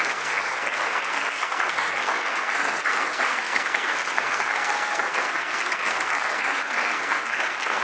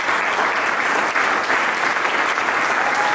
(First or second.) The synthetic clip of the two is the first